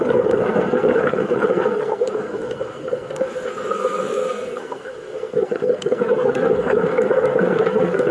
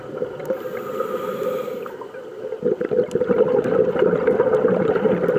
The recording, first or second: second